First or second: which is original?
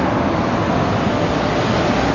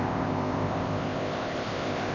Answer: first